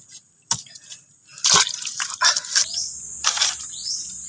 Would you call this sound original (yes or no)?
yes